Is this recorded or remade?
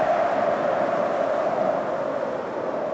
recorded